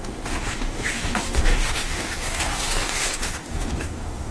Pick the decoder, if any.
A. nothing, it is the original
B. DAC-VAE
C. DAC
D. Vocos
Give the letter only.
C